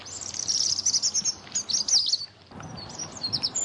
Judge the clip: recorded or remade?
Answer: recorded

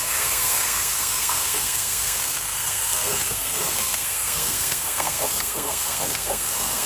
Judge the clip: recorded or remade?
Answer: remade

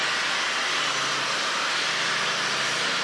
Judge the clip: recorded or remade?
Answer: recorded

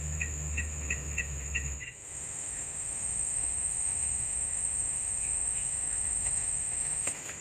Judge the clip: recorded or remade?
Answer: remade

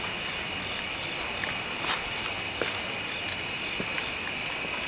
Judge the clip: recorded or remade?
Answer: recorded